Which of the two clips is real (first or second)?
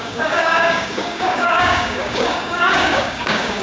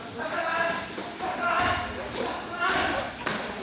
second